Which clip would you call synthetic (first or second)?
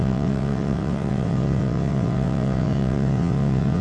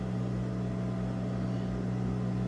first